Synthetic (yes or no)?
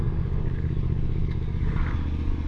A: yes